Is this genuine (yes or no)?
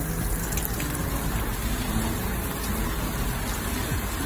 yes